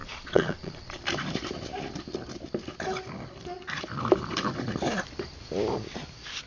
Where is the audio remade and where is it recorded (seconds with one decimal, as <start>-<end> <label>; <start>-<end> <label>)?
0.0-1.0 remade; 1.0-6.5 recorded